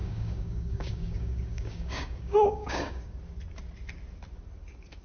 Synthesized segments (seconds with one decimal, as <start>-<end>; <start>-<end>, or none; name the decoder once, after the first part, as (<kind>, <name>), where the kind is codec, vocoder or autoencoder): 0.0-3.0 (codec, DAC)